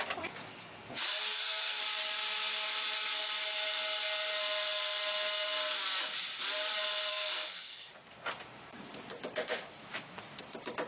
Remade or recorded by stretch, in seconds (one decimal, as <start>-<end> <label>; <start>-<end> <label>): 0.0-1.1 recorded; 1.1-1.8 remade; 1.8-7.1 recorded; 7.1-7.9 remade; 7.9-10.9 recorded